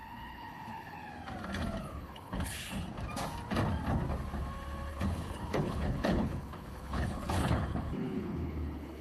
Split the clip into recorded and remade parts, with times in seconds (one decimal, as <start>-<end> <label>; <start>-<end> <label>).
0.0-1.1 remade; 1.1-1.8 recorded; 1.8-2.7 remade; 2.7-4.9 recorded; 4.9-9.0 remade